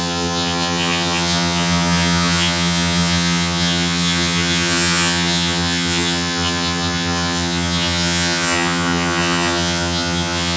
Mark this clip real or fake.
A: fake